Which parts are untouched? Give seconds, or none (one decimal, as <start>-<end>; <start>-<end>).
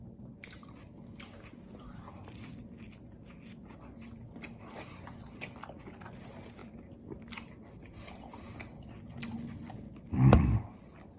0.0-11.2